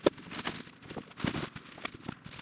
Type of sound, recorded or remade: recorded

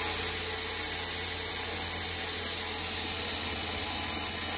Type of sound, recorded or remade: recorded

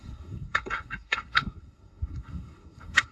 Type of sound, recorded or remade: remade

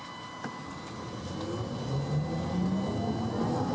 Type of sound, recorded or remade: recorded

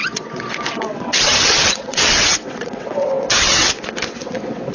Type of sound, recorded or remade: remade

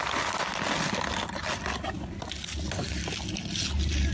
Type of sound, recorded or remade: recorded